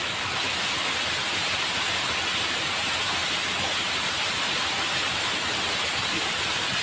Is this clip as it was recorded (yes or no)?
yes